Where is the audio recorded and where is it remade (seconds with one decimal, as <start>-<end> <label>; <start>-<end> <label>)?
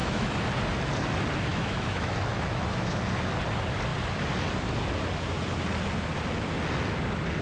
0.0-0.5 remade; 0.5-1.5 recorded; 1.5-3.0 remade; 3.0-7.4 recorded